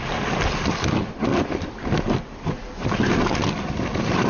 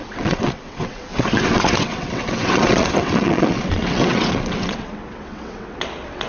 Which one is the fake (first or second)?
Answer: second